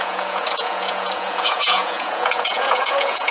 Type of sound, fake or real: fake